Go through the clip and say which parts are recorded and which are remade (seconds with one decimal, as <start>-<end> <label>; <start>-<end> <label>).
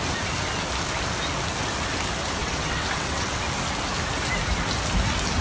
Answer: 0.0-2.4 recorded; 2.4-3.4 remade; 3.4-5.4 recorded